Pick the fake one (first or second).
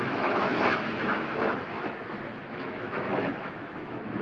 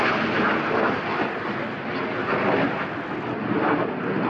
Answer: first